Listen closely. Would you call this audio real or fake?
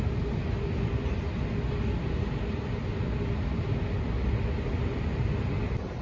real